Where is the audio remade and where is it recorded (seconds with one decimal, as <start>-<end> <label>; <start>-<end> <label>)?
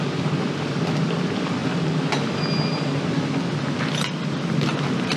0.0-1.6 remade; 1.6-3.9 recorded; 3.9-5.2 remade